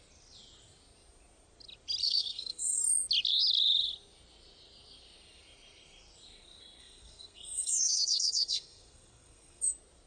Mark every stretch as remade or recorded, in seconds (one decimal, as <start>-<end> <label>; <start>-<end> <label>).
0.0-2.0 recorded; 2.0-2.8 remade; 2.8-6.8 recorded; 6.8-9.6 remade; 9.6-10.1 recorded